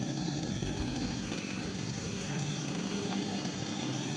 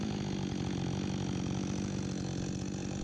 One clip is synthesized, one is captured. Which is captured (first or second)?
second